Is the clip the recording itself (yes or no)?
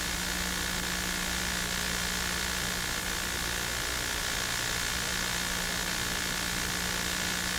yes